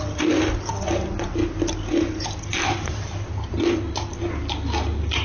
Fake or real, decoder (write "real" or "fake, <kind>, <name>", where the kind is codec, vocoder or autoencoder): real